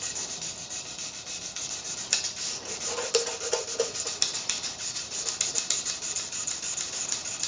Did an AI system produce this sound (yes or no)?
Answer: no